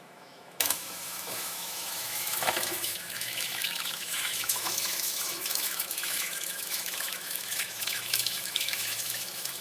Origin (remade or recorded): remade